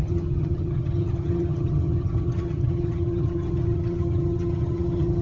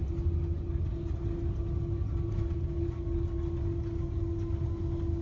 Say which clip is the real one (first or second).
second